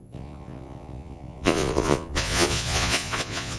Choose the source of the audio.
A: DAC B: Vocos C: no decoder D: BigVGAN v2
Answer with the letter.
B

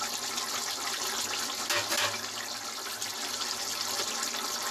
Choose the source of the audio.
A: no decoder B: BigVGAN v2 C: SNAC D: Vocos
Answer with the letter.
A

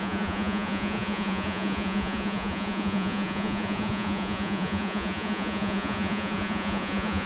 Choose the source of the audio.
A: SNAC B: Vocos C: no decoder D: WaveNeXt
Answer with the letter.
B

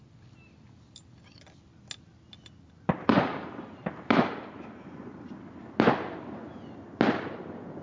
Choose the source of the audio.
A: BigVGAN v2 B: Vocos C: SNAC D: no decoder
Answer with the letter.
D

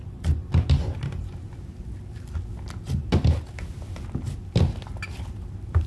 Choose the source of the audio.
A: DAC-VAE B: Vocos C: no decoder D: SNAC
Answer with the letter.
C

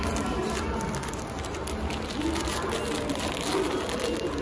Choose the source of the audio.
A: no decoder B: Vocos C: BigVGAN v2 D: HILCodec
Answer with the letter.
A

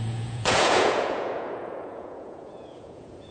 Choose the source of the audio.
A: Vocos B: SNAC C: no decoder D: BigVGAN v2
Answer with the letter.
A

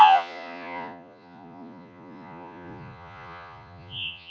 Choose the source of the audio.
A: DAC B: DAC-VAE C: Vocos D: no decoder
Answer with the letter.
C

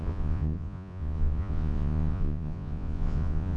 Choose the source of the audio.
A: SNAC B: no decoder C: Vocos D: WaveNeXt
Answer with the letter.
C